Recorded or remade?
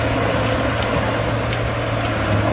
recorded